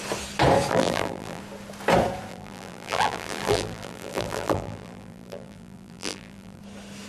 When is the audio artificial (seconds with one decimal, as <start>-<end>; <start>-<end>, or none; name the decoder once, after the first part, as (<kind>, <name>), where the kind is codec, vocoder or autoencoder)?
0.7-1.4 (vocoder, BigVGAN v2); 2.3-6.6